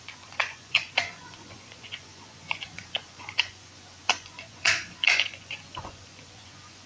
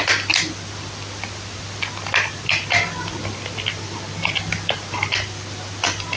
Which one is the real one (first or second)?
second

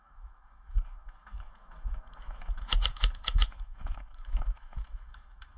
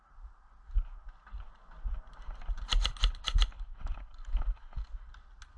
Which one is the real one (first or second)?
second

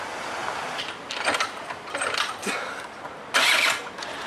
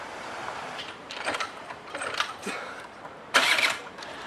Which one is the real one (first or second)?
first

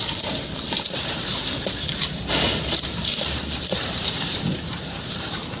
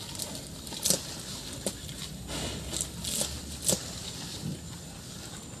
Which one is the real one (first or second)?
second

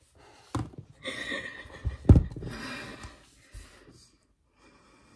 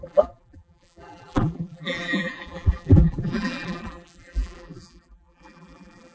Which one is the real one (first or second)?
first